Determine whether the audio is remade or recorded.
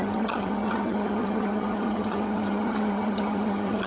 remade